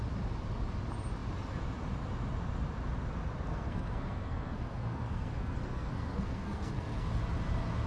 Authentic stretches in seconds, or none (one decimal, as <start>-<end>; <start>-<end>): 0.0-3.5; 7.2-7.9